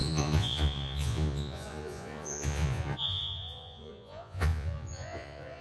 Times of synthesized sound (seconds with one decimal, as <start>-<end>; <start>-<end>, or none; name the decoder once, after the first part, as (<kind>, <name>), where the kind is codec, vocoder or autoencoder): 0.0-5.6 (vocoder, Vocos)